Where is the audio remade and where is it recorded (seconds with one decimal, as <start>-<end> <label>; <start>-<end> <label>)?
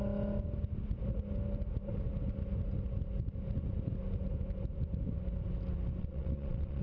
0.0-6.0 recorded; 6.0-6.8 remade